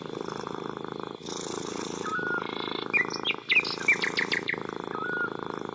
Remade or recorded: recorded